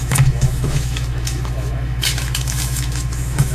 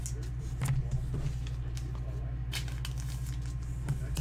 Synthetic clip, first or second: first